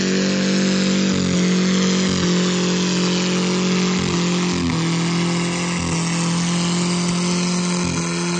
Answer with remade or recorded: recorded